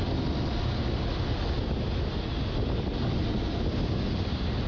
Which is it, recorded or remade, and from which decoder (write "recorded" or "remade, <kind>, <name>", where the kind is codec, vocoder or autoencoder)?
recorded